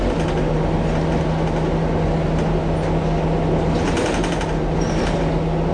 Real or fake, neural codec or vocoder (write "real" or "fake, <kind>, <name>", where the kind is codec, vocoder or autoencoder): real